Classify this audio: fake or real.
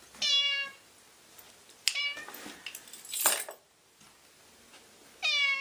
real